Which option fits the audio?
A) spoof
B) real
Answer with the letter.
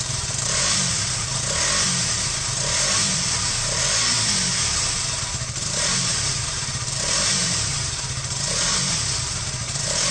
A